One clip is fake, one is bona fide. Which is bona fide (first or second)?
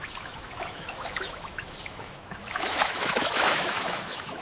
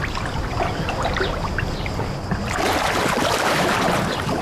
second